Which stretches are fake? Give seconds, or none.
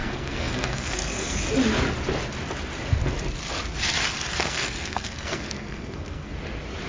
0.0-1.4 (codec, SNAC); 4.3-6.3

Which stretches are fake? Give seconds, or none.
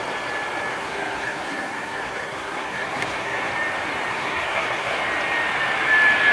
0.7-3.5 (codec, SNAC); 4.1-5.0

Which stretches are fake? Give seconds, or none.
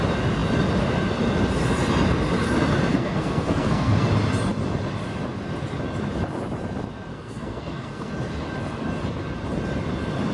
2.9-4.1 (codec, SNAC); 7.1-8.1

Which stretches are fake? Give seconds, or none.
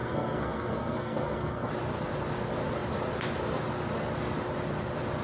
0.0-1.7 (codec, SNAC)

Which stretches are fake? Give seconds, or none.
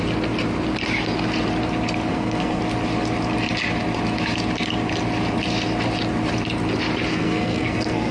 2.1-2.6 (codec, SNAC); 7.1-8.1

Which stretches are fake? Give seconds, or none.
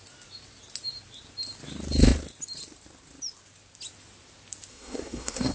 4.7-5.5 (codec, SNAC)